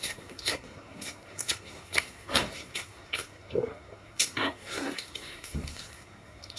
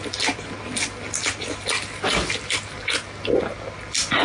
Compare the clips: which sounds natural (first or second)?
second